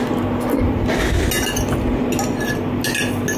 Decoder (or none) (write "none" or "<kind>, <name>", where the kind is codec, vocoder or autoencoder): none